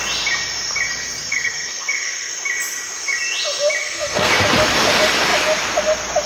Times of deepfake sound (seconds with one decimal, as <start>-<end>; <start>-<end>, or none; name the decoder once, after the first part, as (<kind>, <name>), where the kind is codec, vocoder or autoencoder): 1.3-2.3 (codec, SNAC); 3.8-4.3